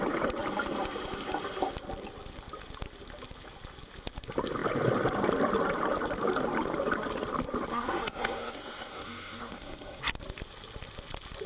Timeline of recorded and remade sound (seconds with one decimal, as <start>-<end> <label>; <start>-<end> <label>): 0.0-7.7 recorded; 7.7-10.0 remade; 10.0-11.5 recorded